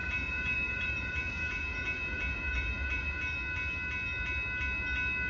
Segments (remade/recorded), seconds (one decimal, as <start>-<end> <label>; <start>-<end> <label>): 0.0-3.2 remade; 3.2-5.3 recorded